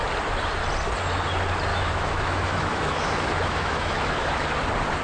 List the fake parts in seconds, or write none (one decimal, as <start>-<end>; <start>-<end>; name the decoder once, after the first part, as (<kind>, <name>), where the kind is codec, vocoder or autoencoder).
1.7-4.5 (autoencoder, DAC-VAE)